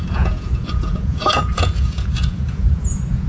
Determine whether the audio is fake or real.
fake